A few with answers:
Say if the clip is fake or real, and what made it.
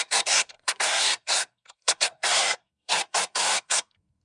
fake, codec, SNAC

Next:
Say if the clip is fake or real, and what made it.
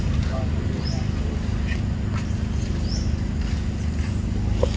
real